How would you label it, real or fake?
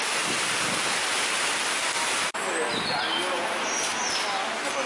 real